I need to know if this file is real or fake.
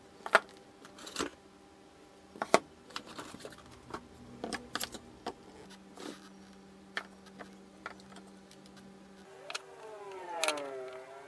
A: real